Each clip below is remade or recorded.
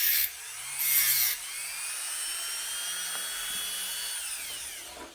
recorded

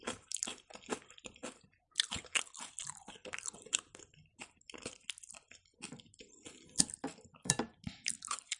recorded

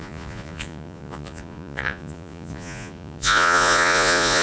remade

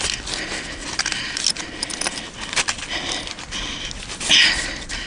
recorded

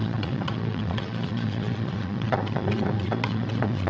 remade